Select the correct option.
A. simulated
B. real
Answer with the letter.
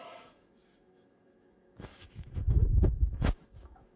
A